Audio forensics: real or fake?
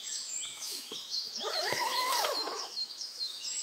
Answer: fake